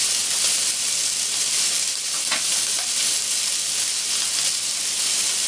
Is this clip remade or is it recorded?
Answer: recorded